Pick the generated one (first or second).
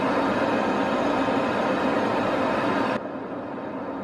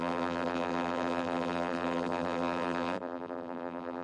second